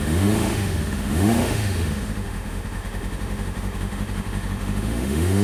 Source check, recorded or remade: remade